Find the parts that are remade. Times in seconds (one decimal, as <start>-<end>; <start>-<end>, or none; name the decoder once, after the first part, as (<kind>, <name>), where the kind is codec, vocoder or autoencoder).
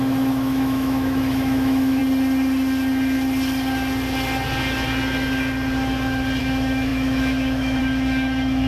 0.0-2.0 (autoencoder, DAC-VAE); 6.4-8.7